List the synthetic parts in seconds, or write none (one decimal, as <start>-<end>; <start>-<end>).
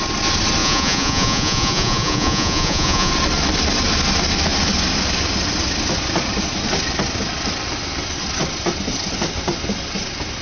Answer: 0.6-3.1